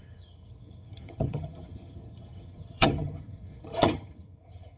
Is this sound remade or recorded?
remade